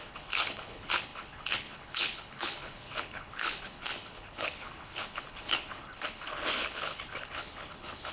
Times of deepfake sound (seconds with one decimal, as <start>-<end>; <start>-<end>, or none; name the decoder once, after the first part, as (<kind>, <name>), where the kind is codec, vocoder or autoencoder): 0.0-8.1 (codec, HILCodec)